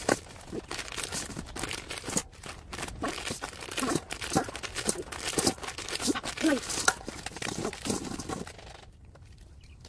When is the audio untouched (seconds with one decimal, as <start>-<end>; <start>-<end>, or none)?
0.0-2.2; 2.9-9.9